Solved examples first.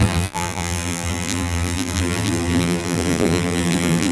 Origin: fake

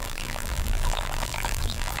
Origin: fake